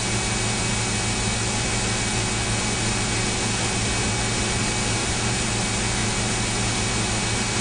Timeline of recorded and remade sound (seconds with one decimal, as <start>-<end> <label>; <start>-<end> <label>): 0.0-5.0 recorded; 5.0-5.5 remade; 5.5-7.6 recorded